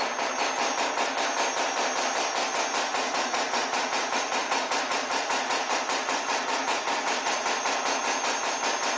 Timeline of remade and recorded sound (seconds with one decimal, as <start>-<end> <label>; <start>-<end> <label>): 0.0-2.9 recorded; 2.9-8.0 remade; 8.0-9.0 recorded